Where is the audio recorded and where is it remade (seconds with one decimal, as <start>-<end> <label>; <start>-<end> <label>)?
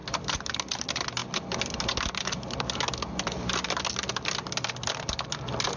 0.0-0.5 remade; 0.5-5.8 recorded